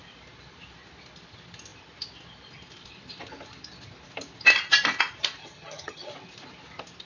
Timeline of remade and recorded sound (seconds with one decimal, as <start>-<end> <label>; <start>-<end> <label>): 0.0-5.4 recorded; 5.4-6.1 remade; 6.1-7.1 recorded